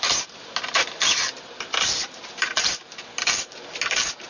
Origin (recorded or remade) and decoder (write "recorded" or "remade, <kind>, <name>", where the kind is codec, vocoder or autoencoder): recorded